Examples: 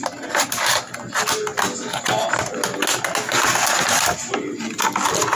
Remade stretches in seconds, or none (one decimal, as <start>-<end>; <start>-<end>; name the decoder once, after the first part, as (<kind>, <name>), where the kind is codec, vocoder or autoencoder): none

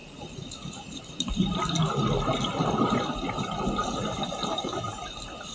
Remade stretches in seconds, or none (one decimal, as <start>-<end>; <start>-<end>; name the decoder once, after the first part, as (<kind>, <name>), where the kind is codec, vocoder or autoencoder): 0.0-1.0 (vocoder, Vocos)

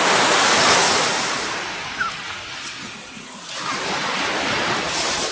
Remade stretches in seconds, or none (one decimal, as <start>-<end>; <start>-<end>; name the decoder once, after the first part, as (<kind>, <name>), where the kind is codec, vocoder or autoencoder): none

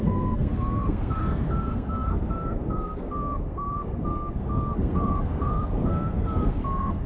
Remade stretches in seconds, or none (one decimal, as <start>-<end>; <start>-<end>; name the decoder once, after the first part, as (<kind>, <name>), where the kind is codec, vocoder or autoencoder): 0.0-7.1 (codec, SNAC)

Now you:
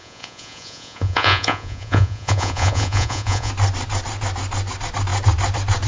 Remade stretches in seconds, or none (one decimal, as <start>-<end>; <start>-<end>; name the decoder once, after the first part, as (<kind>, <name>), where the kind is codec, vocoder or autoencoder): 0.0-3.5 (vocoder, Vocos)

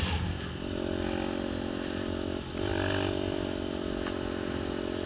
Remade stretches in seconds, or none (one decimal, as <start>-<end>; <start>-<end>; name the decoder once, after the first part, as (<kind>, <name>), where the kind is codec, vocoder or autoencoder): none

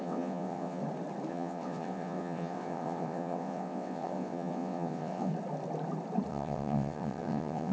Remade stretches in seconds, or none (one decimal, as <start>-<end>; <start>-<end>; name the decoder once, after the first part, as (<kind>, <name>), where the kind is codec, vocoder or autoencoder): 0.0-0.8 (vocoder, WaveNeXt); 1.3-5.3; 6.3-7.7